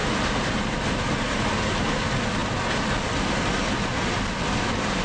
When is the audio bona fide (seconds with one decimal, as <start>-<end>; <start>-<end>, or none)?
0.0-5.0